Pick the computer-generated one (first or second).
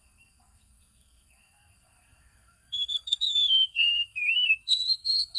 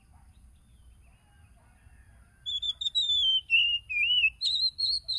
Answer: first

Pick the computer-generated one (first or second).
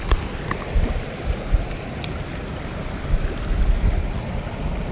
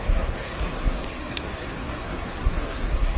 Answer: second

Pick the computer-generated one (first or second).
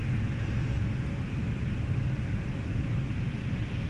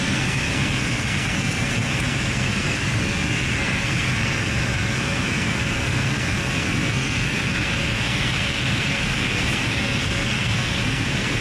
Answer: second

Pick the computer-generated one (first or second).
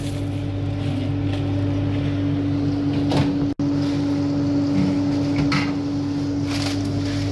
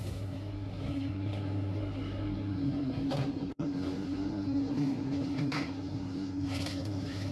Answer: second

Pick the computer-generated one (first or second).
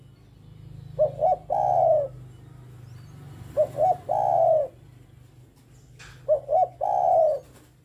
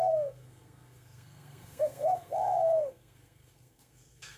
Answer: second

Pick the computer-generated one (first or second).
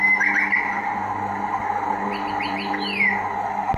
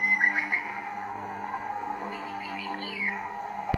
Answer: second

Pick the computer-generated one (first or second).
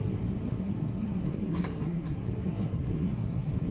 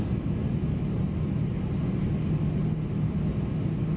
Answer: first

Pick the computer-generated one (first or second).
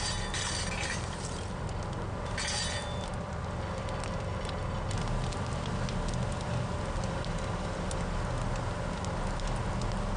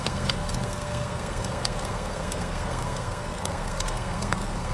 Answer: second